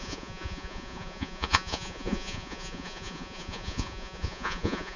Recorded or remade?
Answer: remade